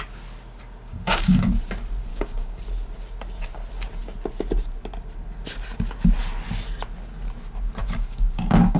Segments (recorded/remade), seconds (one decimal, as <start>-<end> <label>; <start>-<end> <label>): 0.0-0.9 recorded; 0.9-1.5 remade; 1.5-2.1 recorded; 2.1-2.6 remade; 2.6-7.8 recorded; 7.8-8.8 remade